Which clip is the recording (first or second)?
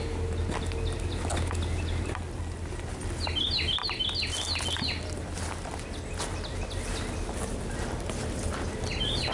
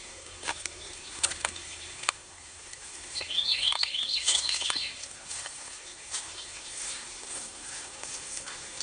first